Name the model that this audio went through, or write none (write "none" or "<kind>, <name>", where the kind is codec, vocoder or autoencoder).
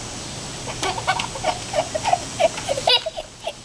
none